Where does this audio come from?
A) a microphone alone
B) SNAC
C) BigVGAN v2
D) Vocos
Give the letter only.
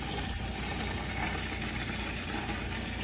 A